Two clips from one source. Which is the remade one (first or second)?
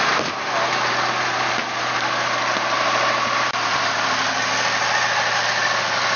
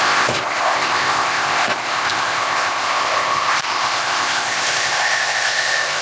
second